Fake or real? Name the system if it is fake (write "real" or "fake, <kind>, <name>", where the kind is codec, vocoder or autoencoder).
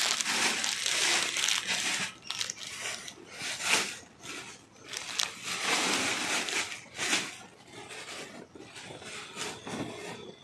real